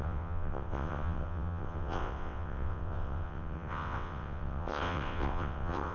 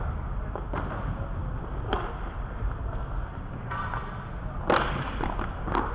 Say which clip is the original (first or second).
second